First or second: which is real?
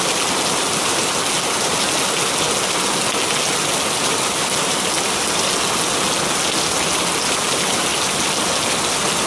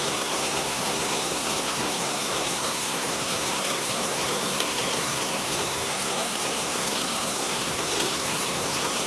first